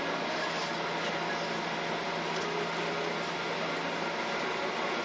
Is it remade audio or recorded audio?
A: recorded